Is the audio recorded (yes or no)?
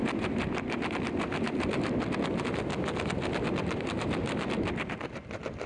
yes